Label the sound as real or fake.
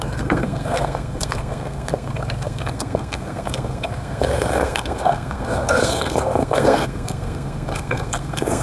fake